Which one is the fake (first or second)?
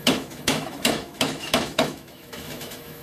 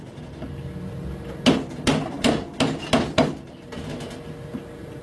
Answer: first